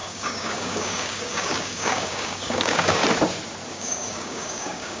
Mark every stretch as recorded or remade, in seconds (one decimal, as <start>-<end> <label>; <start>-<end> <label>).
0.0-3.0 remade; 3.0-3.7 recorded; 3.7-5.0 remade